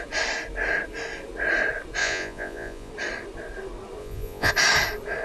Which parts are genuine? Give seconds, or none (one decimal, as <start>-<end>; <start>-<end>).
0.0-2.0; 2.9-4.0; 4.5-5.2